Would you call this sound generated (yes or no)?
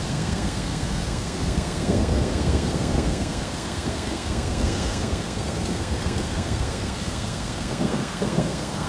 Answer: yes